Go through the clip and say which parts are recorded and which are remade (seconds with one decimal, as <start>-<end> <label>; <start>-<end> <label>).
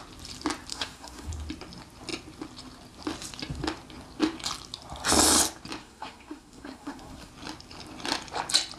0.0-0.7 recorded; 0.7-1.3 remade; 1.3-5.8 recorded; 5.8-7.3 remade; 7.3-8.8 recorded